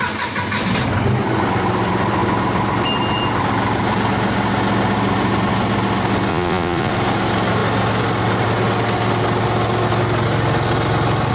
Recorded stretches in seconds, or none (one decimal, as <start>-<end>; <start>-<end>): 0.0-6.3; 6.9-11.3